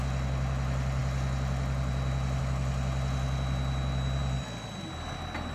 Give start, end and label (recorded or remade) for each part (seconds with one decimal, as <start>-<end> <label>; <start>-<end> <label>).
0.0-5.5 recorded

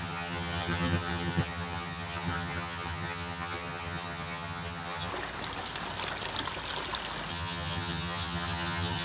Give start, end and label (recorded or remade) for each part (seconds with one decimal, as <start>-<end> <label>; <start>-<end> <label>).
0.0-5.1 remade; 5.1-7.3 recorded; 7.3-9.0 remade